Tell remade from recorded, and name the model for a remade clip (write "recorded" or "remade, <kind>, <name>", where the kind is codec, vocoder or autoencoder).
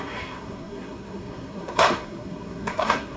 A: remade, codec, SNAC